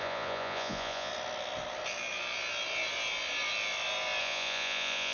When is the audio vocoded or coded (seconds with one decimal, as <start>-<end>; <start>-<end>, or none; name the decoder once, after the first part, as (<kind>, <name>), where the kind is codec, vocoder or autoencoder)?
0.0-1.1 (vocoder, Vocos); 4.2-5.1